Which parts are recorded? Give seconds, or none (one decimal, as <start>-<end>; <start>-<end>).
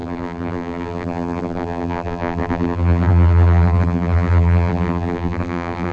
none